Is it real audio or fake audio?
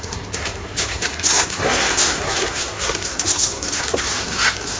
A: fake